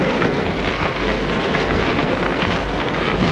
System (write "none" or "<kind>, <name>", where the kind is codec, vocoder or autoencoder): codec, SNAC